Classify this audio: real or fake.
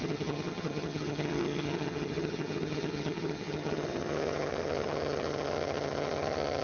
fake